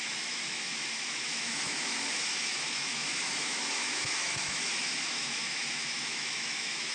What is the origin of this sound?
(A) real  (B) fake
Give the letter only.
B